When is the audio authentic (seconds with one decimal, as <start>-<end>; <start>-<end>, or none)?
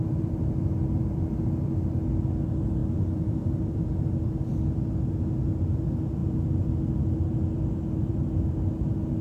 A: 0.0-2.8; 3.9-9.2